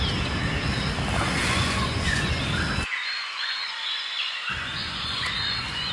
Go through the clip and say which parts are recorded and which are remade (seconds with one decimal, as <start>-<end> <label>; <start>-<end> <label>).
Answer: 0.0-1.4 recorded; 1.4-2.4 remade; 2.4-3.0 recorded; 3.0-5.9 remade